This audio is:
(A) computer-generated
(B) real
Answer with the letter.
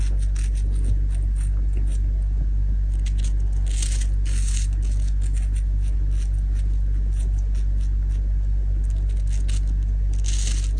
B